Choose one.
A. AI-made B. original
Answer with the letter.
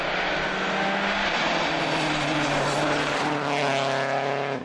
B